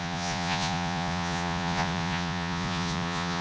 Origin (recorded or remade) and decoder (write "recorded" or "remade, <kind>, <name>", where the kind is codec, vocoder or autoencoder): remade, vocoder, Vocos